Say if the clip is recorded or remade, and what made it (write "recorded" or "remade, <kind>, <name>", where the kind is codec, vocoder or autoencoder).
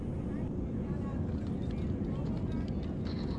recorded